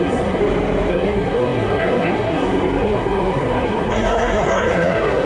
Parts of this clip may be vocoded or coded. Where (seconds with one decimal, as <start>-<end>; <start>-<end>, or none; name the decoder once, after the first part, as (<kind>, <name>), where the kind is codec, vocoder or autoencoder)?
0.0-0.4 (codec, SNAC); 0.9-5.3